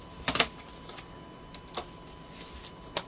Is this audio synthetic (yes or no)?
no